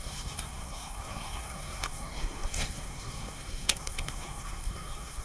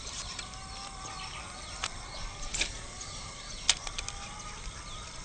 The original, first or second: second